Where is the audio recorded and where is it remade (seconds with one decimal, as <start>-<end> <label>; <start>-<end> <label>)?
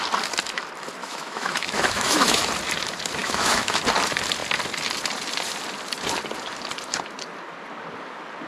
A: 0.0-1.0 recorded; 1.0-2.4 remade; 2.4-3.2 recorded; 3.2-3.8 remade; 3.8-8.5 recorded